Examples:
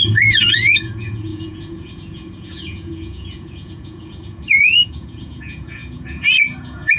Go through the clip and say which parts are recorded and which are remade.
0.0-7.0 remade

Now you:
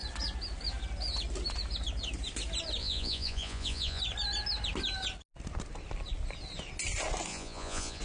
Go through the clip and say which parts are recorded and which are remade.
0.0-2.8 recorded; 2.8-4.0 remade; 4.0-7.3 recorded; 7.3-8.0 remade

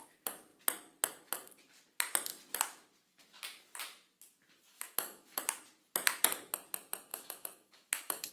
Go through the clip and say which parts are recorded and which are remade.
0.0-4.7 recorded; 4.7-5.4 remade; 5.4-7.1 recorded; 7.1-8.3 remade